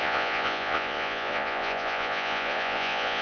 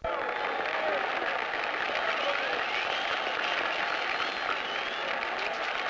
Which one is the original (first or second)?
second